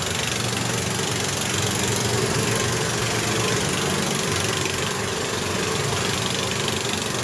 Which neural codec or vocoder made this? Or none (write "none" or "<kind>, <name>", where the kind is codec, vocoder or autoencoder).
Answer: none